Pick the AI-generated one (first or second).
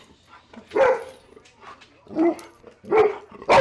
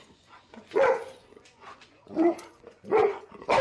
second